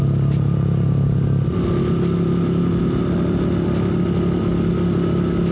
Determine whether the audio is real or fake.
real